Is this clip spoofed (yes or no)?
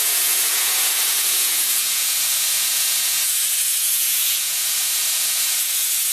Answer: yes